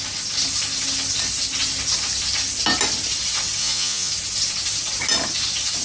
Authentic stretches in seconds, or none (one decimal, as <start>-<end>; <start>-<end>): 0.0-3.6; 4.1-5.8